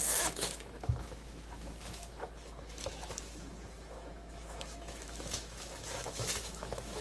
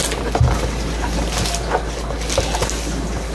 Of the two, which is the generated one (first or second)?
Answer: first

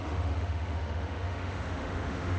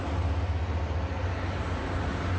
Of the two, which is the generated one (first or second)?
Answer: first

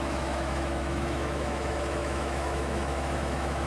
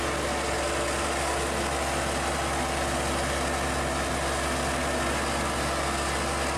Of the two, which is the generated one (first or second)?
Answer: first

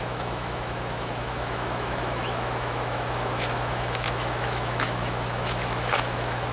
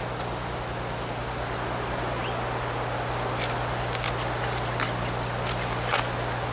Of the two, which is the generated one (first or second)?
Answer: first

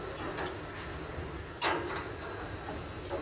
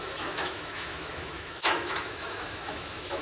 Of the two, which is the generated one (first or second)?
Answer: second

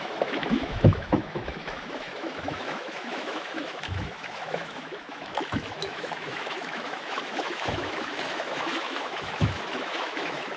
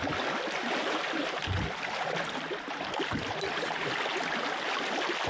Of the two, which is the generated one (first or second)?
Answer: first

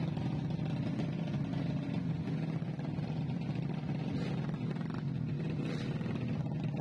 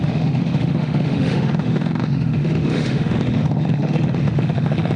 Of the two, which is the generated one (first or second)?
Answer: second